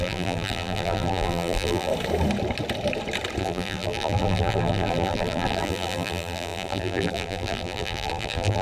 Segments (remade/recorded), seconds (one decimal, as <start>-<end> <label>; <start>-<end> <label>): 0.0-1.9 remade; 1.9-3.4 recorded; 3.4-8.6 remade